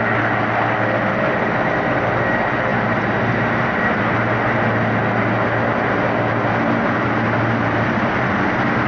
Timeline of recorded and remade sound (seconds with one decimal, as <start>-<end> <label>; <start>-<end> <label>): 0.0-8.9 recorded